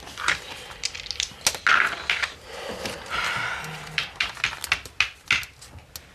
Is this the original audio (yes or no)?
yes